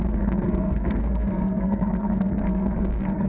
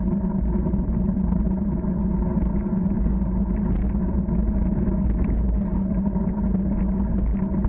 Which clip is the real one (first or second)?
second